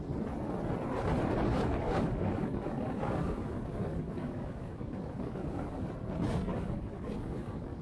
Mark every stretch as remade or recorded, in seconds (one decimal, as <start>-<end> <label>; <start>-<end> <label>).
0.0-1.5 recorded; 1.5-5.9 remade; 5.9-6.5 recorded; 6.5-7.8 remade